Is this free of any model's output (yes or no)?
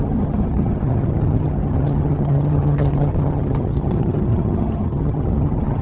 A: no